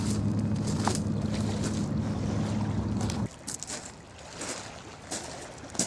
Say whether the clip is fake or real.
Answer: real